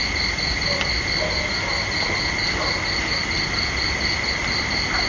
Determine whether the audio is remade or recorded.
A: recorded